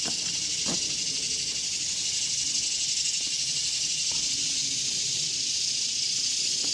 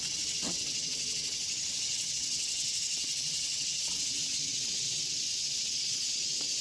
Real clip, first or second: first